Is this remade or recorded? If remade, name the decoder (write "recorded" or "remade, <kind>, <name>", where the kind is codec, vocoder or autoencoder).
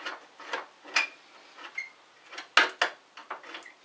recorded